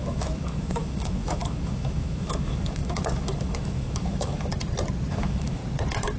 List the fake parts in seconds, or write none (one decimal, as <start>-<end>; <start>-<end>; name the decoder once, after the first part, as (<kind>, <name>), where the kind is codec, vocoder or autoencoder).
0.0-4.5 (autoencoder, DAC-VAE); 5.1-5.6